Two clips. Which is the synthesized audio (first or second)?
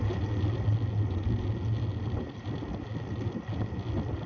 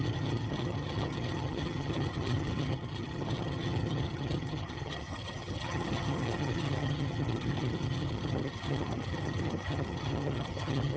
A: second